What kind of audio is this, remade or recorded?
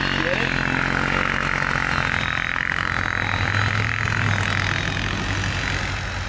recorded